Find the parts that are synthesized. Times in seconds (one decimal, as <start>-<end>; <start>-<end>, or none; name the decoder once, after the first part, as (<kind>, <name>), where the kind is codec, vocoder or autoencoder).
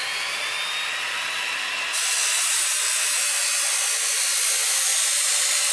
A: none